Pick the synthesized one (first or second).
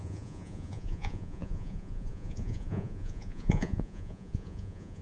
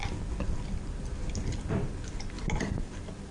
first